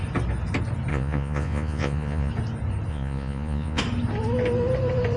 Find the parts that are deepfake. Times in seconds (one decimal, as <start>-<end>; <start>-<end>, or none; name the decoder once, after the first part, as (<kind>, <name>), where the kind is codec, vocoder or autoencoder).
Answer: 0.9-2.3 (vocoder, Vocos); 2.9-3.8